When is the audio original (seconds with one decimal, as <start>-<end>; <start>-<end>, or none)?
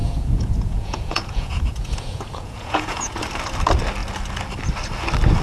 3.2-5.4